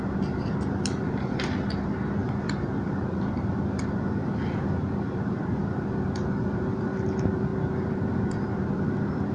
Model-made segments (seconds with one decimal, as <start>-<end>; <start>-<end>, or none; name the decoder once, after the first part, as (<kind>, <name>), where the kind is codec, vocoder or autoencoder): none